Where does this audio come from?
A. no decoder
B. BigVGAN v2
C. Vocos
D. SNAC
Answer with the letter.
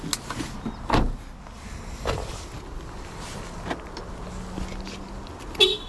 A